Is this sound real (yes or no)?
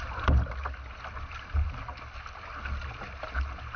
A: yes